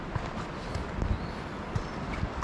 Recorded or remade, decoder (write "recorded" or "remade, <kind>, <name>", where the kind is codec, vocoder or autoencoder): recorded